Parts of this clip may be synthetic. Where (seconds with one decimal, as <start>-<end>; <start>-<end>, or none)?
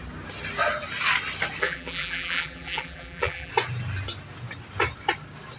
1.6-3.5